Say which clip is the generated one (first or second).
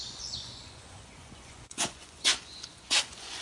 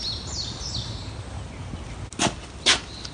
first